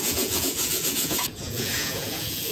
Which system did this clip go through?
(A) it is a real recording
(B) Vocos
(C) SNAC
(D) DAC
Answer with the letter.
B